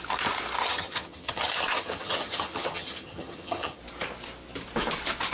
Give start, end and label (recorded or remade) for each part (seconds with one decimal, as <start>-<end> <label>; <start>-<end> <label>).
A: 0.0-0.6 recorded; 0.6-3.8 remade; 3.8-5.3 recorded